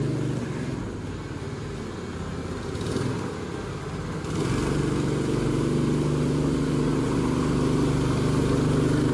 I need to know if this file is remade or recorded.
recorded